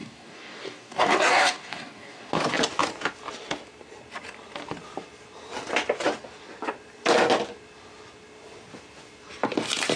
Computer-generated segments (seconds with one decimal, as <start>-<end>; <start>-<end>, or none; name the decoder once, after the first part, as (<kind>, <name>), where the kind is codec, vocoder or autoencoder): 0.0-2.3 (codec, DAC)